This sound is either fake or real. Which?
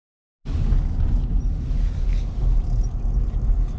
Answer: real